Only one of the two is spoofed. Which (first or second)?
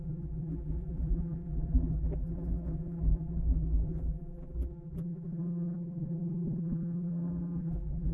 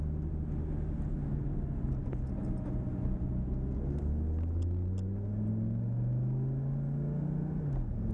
first